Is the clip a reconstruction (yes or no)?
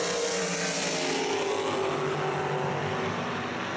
no